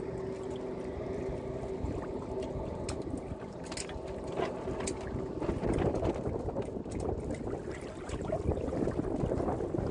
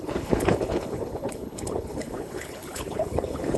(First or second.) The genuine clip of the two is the first